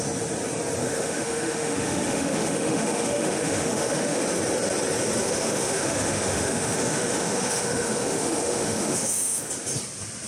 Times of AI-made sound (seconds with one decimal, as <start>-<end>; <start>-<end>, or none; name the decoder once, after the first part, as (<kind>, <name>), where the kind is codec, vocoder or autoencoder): 0.8-4.2 (autoencoder, DAC-VAE); 5.2-9.5